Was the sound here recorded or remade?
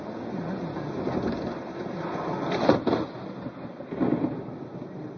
recorded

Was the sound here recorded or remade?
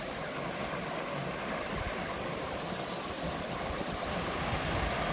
recorded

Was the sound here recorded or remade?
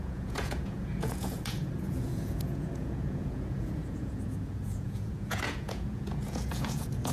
remade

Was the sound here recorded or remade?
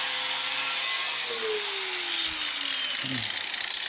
recorded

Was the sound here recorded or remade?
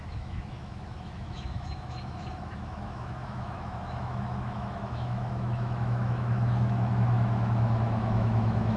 remade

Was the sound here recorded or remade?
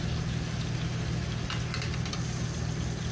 recorded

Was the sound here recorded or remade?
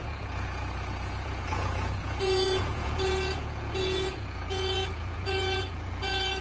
remade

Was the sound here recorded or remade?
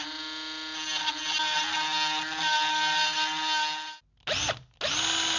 recorded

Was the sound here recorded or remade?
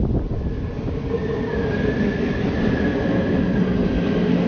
recorded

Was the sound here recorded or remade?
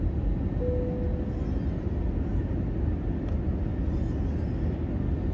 recorded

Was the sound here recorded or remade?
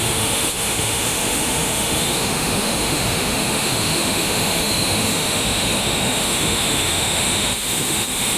remade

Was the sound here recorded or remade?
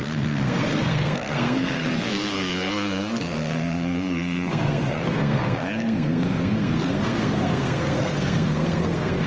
remade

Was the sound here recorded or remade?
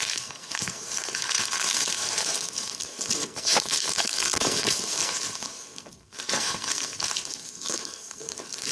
remade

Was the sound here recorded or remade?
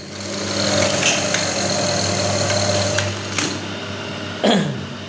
recorded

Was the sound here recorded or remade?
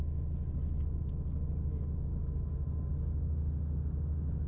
recorded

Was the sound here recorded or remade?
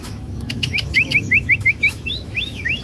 remade